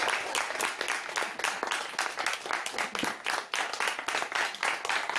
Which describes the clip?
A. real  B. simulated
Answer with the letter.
A